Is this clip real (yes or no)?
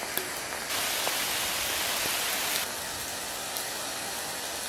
yes